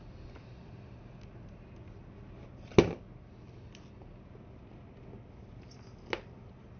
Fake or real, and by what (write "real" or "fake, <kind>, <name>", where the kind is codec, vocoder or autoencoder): real